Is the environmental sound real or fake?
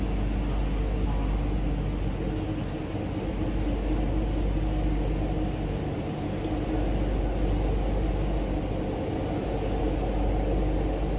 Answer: real